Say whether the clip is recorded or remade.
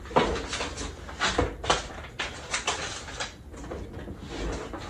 recorded